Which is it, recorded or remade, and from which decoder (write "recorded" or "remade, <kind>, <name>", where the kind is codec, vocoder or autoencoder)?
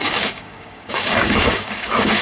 remade, codec, DAC